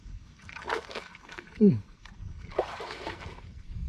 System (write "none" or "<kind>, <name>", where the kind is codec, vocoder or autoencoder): codec, SNAC